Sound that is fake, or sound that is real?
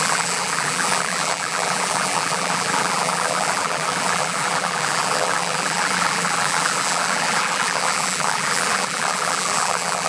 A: fake